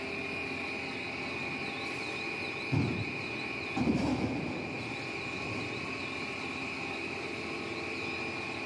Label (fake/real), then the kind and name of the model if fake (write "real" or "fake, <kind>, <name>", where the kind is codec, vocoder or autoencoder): real